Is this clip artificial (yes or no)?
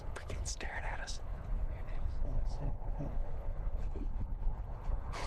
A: yes